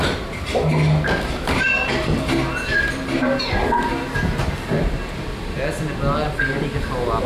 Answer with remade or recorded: recorded